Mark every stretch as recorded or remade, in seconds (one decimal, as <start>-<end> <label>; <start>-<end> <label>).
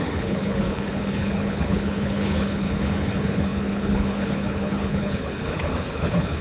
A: 0.0-6.4 remade